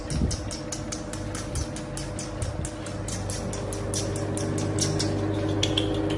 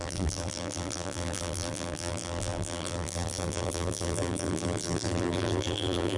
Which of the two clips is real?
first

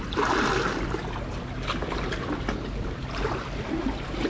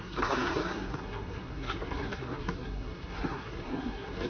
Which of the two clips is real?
first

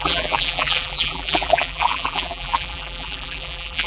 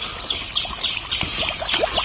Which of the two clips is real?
second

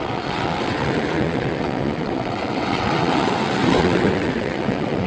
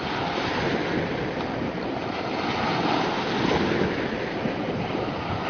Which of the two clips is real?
second